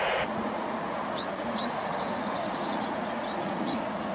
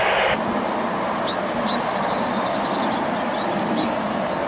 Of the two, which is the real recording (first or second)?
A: second